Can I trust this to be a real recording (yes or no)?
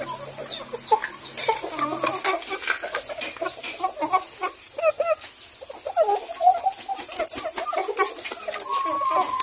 yes